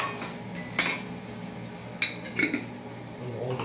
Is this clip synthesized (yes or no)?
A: no